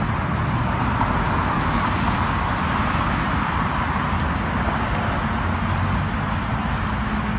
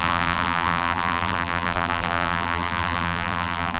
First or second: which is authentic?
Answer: first